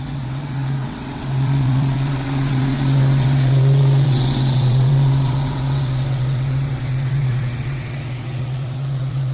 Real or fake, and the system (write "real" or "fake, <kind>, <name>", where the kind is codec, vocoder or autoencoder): fake, vocoder, WaveNeXt